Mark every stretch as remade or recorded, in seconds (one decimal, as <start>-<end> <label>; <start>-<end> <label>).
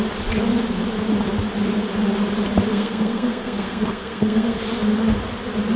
0.0-2.7 recorded; 2.7-4.6 remade; 4.6-5.8 recorded